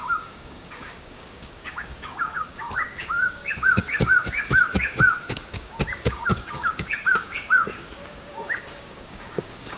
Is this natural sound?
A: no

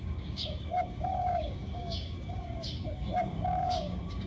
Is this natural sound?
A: no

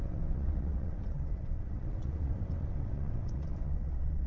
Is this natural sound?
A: no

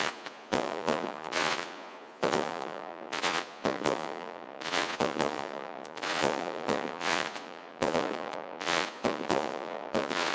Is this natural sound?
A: no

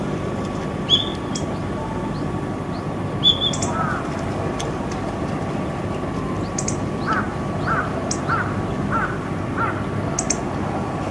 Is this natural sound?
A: yes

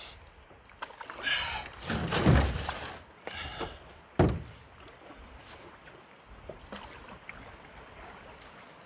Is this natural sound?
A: yes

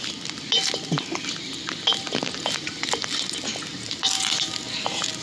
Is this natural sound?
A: yes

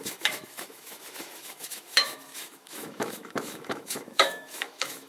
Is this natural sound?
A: no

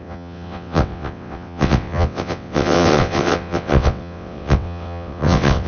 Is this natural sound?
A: no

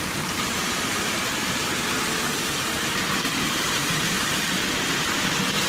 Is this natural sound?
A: no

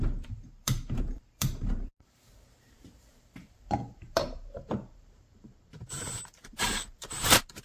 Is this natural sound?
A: no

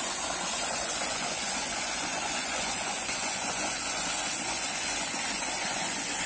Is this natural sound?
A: no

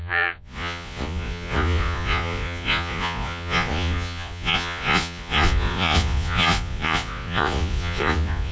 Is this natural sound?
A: no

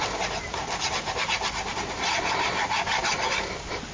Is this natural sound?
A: yes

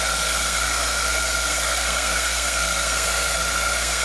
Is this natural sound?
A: no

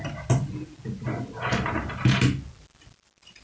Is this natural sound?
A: yes